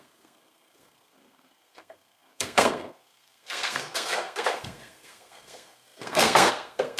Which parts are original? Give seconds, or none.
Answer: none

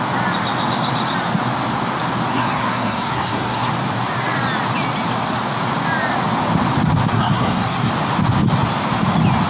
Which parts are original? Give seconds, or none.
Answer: 0.0-2.3; 3.7-7.1; 7.9-9.5

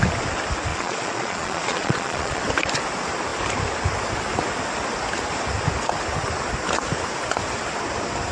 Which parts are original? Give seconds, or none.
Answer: 0.0-0.7; 2.4-8.3

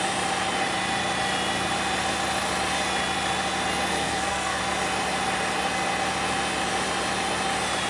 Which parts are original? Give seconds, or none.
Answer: 0.0-3.9; 4.6-7.9

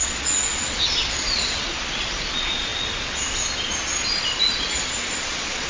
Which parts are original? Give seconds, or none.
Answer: 2.7-4.6

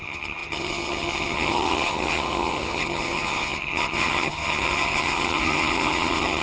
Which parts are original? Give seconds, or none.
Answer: none

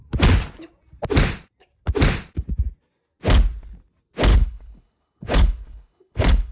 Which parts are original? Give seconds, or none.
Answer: 0.0-4.3